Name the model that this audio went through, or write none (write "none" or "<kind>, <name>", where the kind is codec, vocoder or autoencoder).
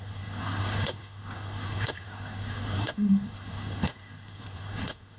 codec, SNAC